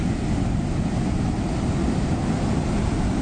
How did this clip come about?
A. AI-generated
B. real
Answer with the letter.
B